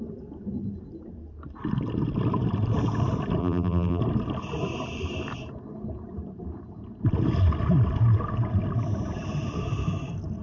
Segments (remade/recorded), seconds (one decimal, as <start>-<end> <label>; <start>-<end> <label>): 0.0-3.4 recorded; 3.4-4.0 remade; 4.0-10.4 recorded

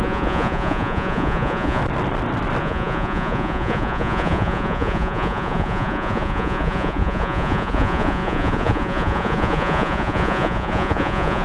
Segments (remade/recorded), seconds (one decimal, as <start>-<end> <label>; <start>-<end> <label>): 0.0-1.8 remade; 1.8-2.6 recorded; 2.6-11.4 remade

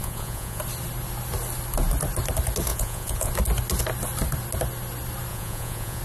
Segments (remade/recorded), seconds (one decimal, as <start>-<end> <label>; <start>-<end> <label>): 0.0-0.6 remade; 0.6-2.7 recorded; 2.7-3.3 remade; 3.3-5.3 recorded; 5.3-6.0 remade

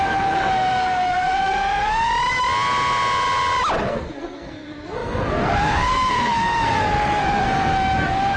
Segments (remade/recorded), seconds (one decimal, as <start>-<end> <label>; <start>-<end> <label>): 0.0-2.1 remade; 2.1-3.8 recorded; 3.8-8.4 remade